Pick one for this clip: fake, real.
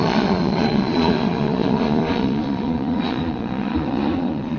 fake